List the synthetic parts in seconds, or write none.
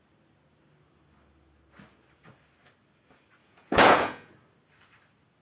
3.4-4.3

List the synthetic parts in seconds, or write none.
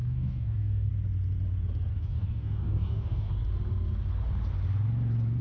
0.0-0.9; 1.9-3.3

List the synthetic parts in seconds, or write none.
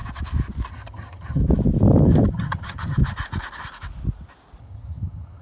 0.7-1.4; 2.3-3.0; 4.6-5.4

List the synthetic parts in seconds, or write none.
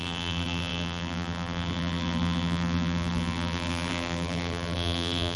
0.0-5.4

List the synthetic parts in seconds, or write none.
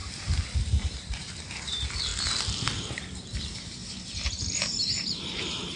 0.8-2.1; 3.4-5.8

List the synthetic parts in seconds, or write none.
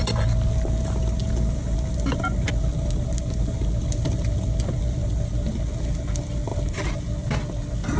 none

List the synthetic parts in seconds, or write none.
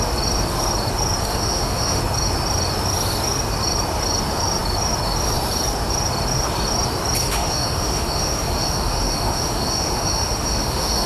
1.2-2.0; 7.2-11.1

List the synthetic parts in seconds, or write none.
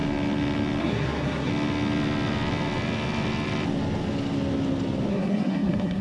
0.8-1.5; 5.1-6.0